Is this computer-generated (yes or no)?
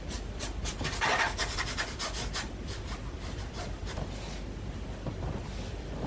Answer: yes